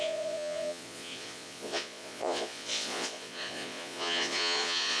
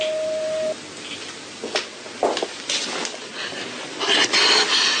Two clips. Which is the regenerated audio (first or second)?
first